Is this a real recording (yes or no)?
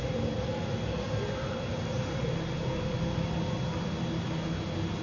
yes